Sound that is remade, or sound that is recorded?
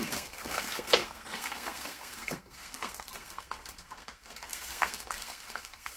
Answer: remade